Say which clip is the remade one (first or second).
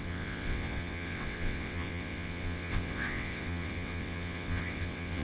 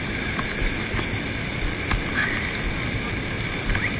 first